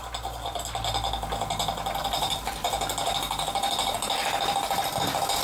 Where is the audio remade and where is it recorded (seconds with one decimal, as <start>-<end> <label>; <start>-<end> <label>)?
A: 0.0-2.0 recorded; 2.0-5.4 remade